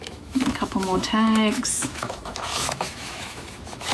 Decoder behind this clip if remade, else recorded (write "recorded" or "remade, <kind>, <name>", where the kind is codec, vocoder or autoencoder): remade, autoencoder, DAC-VAE